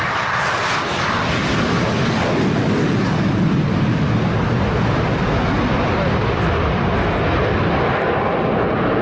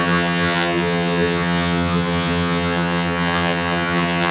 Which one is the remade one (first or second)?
second